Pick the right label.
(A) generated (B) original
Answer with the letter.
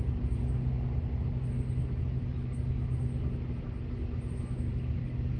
B